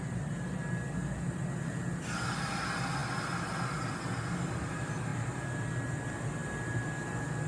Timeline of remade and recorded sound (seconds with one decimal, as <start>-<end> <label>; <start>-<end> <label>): 0.0-7.5 recorded